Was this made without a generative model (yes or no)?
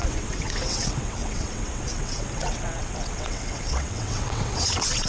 no